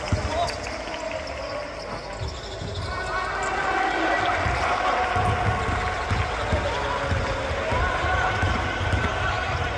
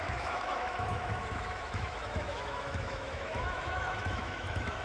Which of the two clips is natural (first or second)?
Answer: first